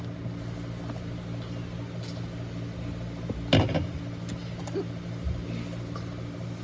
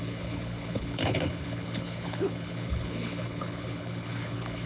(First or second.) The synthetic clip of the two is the second